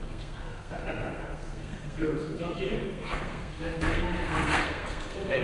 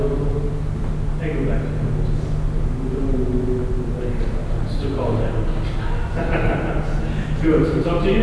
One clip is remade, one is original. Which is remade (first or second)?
first